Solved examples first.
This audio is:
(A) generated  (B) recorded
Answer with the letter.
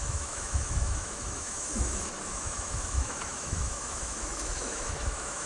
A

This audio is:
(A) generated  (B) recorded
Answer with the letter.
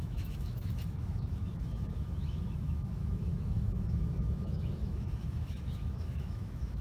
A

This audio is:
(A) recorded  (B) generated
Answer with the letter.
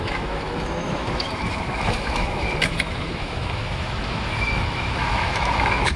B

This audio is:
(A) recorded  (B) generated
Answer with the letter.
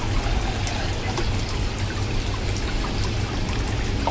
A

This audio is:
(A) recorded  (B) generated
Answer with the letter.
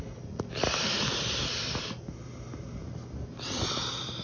A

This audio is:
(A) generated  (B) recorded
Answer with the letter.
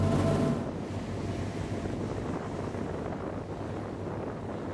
B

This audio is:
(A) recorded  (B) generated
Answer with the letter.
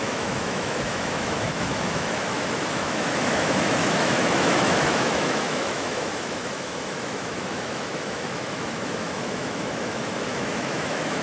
B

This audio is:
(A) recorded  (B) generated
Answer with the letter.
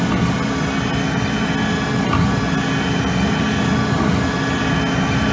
A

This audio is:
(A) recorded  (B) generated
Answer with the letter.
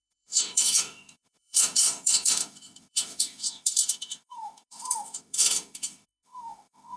B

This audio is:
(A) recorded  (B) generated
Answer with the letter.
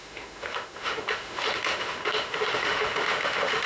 B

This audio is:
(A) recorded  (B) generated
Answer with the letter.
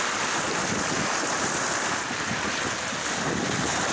A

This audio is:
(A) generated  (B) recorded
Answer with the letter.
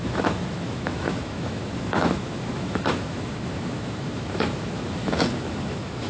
A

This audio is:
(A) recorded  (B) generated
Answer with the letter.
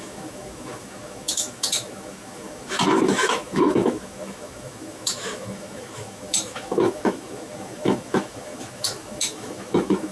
B